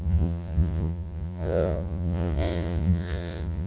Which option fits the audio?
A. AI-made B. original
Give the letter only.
A